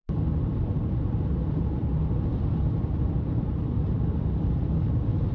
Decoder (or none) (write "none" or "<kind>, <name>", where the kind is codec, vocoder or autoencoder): vocoder, BigVGAN v2